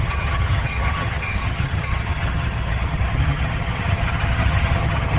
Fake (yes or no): yes